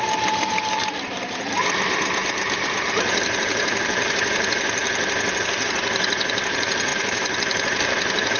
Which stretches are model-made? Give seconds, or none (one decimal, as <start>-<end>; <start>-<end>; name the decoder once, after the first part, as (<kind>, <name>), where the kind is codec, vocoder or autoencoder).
0.0-4.8 (vocoder, BigVGAN v2); 5.4-8.4

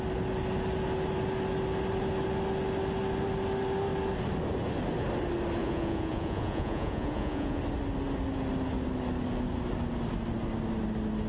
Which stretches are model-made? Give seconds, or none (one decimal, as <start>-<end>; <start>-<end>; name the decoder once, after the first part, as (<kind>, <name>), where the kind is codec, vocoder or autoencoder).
5.6-7.6 (vocoder, Vocos)